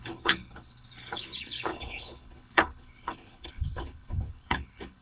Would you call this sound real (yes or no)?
no